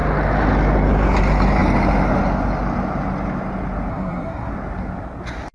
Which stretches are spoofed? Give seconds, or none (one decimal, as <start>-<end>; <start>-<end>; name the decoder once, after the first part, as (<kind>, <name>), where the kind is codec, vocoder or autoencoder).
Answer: 3.9-4.5 (codec, SNAC)